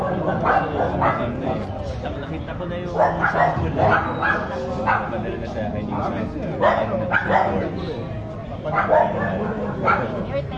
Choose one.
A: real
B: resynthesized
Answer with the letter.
A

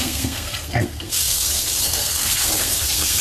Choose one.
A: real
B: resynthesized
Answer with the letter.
B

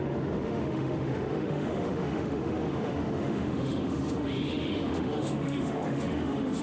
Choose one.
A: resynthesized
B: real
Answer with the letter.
A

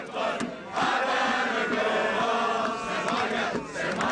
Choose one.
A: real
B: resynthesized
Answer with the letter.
A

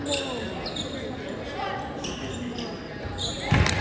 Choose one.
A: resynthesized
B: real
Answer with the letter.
B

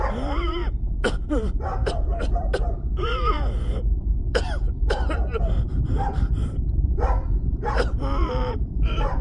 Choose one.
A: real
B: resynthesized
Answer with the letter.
B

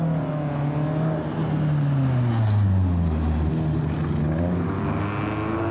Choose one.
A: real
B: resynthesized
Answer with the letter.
A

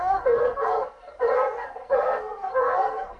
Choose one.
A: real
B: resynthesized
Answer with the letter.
B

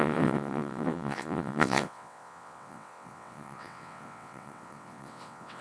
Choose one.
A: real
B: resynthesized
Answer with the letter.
B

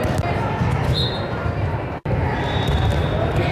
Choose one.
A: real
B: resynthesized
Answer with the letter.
A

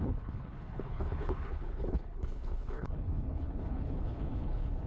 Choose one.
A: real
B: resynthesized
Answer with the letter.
B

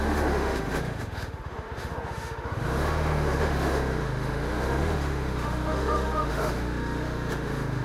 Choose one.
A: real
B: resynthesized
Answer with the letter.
B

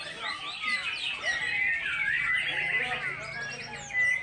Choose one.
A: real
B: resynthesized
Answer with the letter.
A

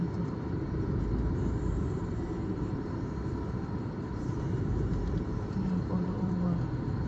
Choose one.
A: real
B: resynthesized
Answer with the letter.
B